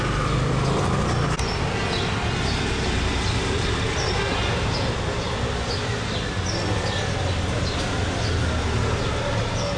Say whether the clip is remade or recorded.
recorded